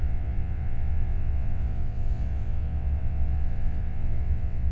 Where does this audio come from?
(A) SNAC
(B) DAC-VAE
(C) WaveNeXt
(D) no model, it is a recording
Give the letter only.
C